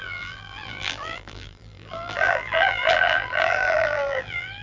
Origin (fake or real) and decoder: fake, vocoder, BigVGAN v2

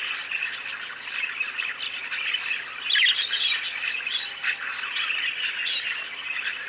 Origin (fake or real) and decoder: real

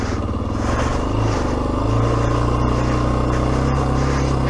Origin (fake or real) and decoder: real